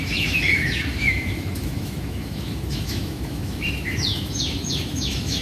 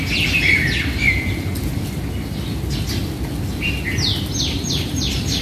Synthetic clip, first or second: first